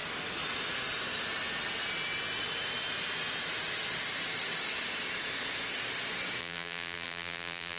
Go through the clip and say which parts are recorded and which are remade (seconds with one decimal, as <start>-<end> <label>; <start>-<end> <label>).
0.0-6.4 recorded; 6.4-7.8 remade

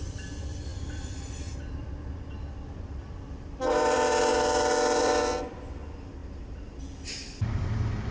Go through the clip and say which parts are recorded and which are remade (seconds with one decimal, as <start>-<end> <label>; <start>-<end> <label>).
0.0-4.3 remade; 4.3-5.0 recorded; 5.0-8.1 remade

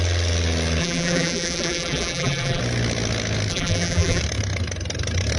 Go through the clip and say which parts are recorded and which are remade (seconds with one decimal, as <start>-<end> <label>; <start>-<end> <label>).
0.0-0.8 recorded; 0.8-2.6 remade; 2.6-3.5 recorded; 3.5-4.2 remade; 4.2-5.4 recorded

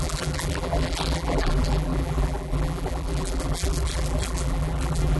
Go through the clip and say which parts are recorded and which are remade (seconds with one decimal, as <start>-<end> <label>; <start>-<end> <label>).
0.0-5.2 remade

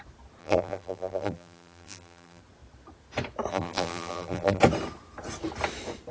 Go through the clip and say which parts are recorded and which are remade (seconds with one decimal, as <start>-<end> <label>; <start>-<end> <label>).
0.0-0.4 recorded; 0.4-2.4 remade; 2.4-3.5 recorded; 3.5-4.6 remade; 4.6-6.1 recorded